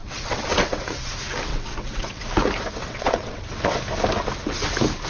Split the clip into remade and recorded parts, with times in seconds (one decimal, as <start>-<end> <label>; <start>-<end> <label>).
0.0-1.1 remade; 1.1-1.5 recorded; 1.5-2.2 remade; 2.2-2.8 recorded; 2.8-3.8 remade; 3.8-5.1 recorded